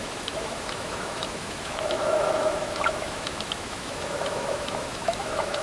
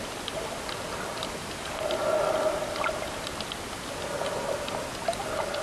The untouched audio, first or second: second